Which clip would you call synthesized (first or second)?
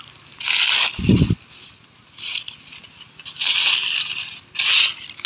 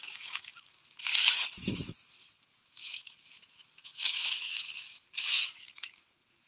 second